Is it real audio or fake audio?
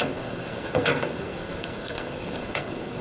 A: fake